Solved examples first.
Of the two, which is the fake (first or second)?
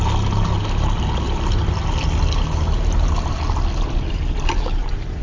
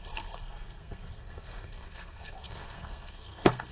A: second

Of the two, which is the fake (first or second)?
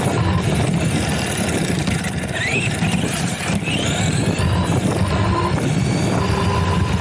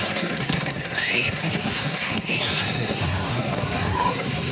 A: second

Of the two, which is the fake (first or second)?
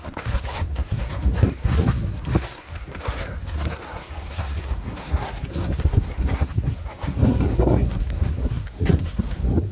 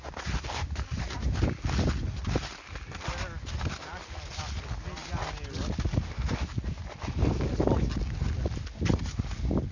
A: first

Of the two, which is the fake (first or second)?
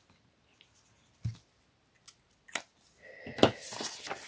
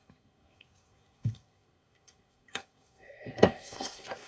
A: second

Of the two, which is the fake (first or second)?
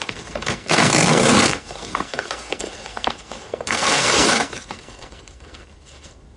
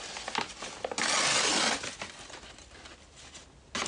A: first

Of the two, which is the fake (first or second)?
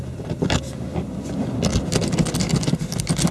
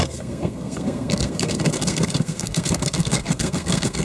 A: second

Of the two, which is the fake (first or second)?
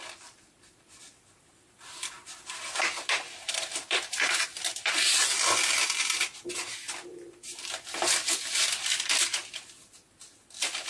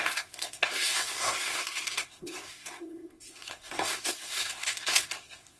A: second